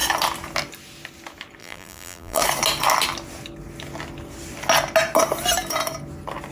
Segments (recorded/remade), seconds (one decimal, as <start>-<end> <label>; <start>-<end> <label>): 0.0-1.6 recorded; 1.6-2.4 remade; 2.4-6.5 recorded